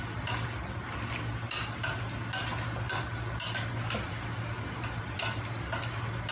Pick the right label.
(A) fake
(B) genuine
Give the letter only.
B